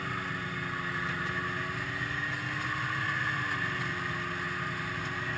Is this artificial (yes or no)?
no